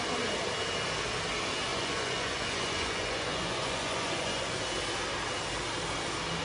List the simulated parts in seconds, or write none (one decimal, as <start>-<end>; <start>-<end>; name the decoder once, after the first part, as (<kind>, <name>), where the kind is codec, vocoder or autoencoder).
1.7-4.6 (vocoder, Vocos)